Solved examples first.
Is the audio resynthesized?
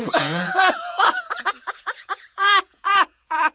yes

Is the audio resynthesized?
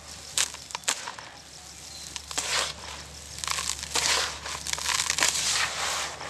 no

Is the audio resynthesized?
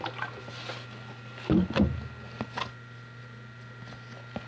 no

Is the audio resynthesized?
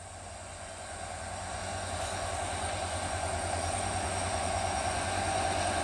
yes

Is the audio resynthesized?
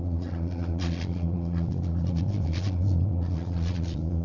yes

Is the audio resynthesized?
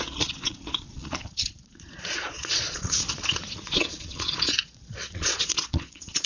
yes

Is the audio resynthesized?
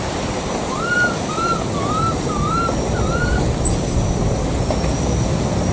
no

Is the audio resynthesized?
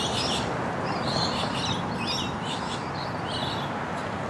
no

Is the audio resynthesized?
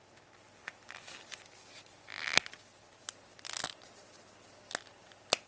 no